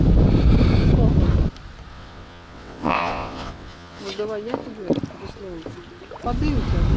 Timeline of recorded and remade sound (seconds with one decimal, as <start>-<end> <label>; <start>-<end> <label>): 0.0-1.9 recorded; 1.9-4.0 remade; 4.0-7.0 recorded